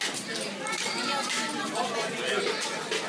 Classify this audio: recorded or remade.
recorded